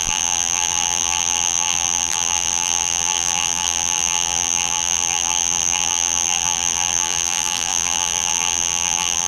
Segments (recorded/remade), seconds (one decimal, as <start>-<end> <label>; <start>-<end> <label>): 0.0-9.3 remade

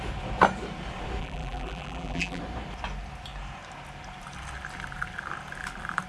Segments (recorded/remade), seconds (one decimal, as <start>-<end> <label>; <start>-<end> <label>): 0.0-1.2 recorded; 1.2-2.4 remade; 2.4-6.1 recorded

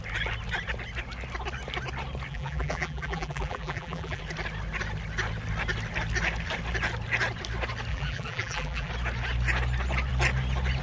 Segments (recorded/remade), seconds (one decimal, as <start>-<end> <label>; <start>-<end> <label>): 0.0-2.3 recorded; 2.3-4.2 remade; 4.2-7.9 recorded; 7.9-8.9 remade; 8.9-10.8 recorded

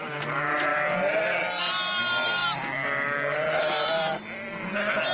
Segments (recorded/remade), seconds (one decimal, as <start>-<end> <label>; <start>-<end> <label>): 0.0-5.1 recorded